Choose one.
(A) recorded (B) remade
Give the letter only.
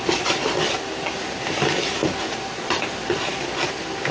A